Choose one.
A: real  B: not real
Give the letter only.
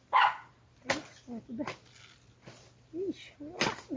A